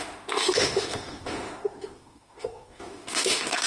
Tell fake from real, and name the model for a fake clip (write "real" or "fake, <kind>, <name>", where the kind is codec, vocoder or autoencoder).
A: fake, autoencoder, DAC-VAE